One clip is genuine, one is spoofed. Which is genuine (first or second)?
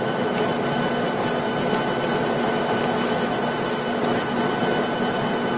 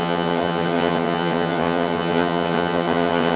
first